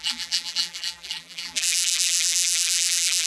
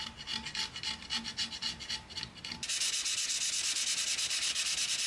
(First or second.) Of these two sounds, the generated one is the first